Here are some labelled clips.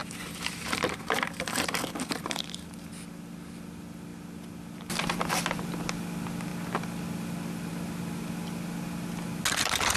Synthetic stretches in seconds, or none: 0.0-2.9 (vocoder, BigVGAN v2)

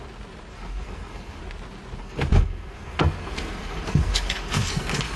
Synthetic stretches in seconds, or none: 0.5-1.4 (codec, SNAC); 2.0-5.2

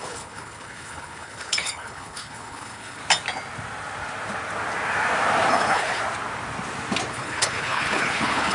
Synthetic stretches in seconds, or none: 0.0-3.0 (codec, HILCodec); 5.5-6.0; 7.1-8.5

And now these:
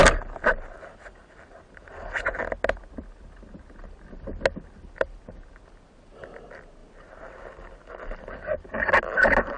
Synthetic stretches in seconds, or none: none